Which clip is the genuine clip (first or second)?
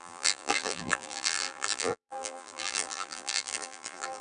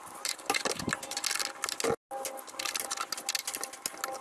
second